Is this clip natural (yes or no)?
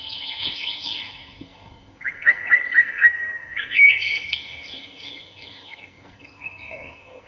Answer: no